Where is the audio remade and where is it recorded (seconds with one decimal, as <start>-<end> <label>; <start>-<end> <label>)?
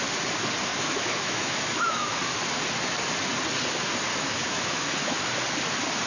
0.0-0.7 recorded; 0.7-2.2 remade; 2.2-4.1 recorded; 4.1-5.2 remade; 5.2-6.1 recorded